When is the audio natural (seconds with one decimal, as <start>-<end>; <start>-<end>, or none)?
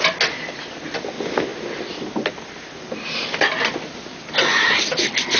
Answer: 0.0-5.4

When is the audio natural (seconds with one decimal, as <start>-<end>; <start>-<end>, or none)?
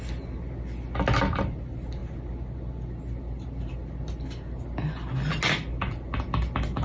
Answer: 0.0-6.8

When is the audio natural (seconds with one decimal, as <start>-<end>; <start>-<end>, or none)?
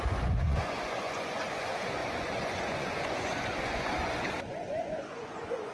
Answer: none